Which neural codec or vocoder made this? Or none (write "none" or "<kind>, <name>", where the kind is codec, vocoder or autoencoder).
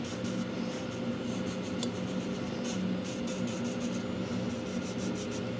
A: none